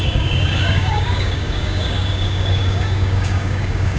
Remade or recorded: remade